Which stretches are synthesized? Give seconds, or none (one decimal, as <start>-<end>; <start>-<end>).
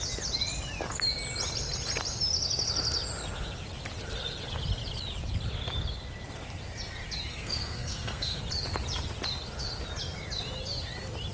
7.3-8.4